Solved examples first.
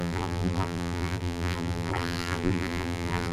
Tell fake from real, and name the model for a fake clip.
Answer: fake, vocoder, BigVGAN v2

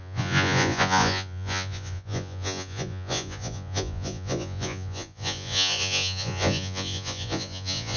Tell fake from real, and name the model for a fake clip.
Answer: fake, vocoder, Vocos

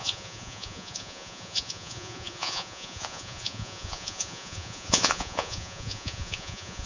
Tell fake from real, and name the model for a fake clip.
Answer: fake, vocoder, Vocos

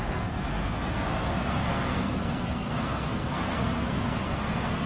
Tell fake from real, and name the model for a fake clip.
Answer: fake, codec, SNAC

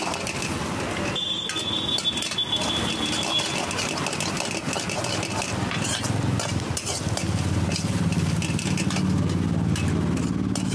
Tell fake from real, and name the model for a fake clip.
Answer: real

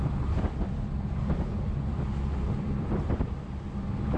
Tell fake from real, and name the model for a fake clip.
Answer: fake, vocoder, BigVGAN v2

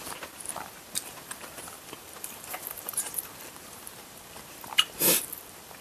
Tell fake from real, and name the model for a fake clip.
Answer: fake, vocoder, BigVGAN v2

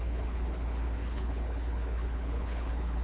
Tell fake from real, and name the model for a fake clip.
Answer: fake, codec, HILCodec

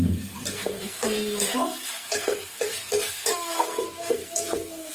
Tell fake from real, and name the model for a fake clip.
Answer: fake, codec, SNAC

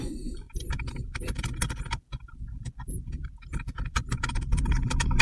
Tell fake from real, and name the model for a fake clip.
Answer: fake, vocoder, BigVGAN v2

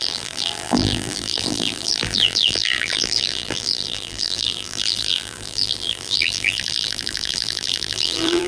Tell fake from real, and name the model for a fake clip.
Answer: fake, vocoder, BigVGAN v2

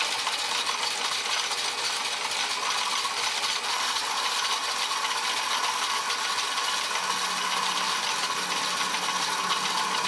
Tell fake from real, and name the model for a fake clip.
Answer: real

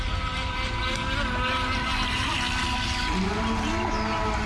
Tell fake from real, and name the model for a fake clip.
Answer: real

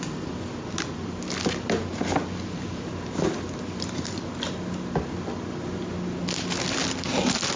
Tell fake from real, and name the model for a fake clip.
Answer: real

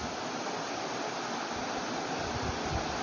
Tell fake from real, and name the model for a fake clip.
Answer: real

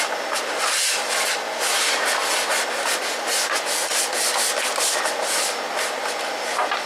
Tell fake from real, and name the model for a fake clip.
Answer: real